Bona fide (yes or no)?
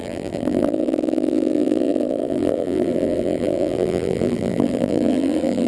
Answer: no